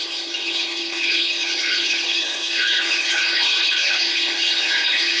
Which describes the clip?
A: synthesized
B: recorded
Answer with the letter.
A